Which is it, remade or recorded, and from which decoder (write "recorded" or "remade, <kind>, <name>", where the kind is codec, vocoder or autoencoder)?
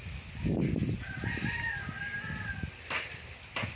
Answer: recorded